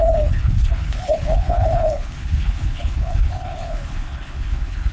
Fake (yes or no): yes